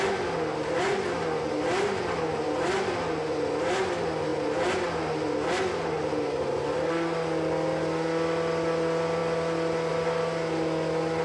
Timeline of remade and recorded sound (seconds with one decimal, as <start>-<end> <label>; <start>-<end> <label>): 0.0-11.2 recorded